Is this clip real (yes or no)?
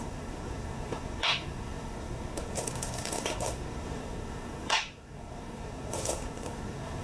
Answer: no